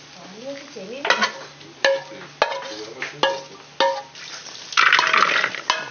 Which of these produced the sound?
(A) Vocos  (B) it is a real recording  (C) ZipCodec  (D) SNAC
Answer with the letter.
B